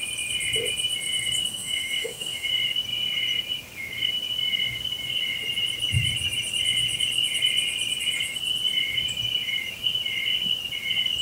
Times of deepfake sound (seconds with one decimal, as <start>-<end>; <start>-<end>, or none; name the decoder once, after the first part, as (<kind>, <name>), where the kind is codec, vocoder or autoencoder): 1.5-2.5 (autoencoder, DAC-VAE)